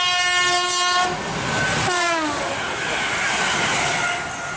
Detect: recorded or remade recorded